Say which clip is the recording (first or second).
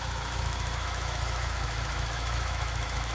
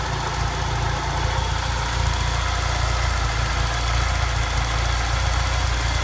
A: second